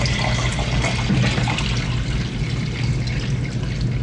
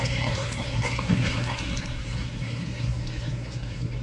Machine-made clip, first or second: second